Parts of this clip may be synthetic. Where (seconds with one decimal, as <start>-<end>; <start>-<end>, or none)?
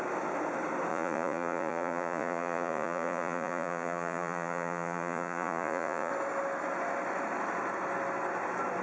0.9-6.1